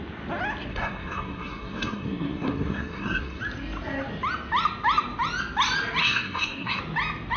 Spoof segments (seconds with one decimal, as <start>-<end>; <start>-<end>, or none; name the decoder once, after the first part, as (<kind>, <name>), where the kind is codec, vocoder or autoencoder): 0.7-3.4 (codec, SNAC); 6.0-6.8